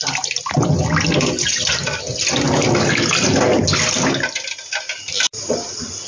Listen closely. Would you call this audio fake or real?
real